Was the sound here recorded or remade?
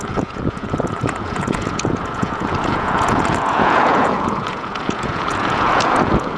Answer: remade